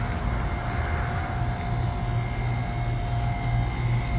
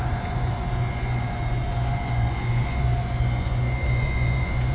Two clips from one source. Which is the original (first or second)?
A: first